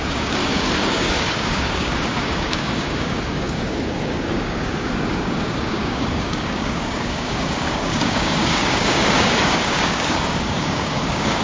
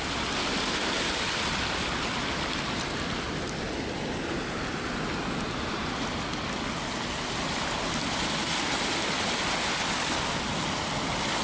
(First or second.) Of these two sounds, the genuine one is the second